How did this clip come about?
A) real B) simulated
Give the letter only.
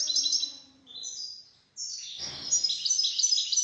A